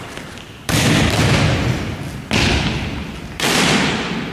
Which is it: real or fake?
real